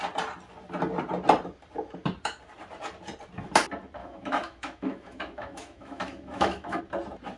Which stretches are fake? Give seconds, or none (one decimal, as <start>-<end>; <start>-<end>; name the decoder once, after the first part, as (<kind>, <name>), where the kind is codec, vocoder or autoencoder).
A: 4.0-6.8 (autoencoder, DAC-VAE)